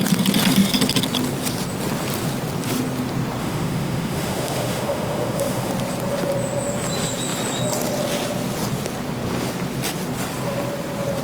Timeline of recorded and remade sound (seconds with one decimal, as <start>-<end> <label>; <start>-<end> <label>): 0.0-3.4 recorded; 3.4-5.7 remade; 5.7-11.2 recorded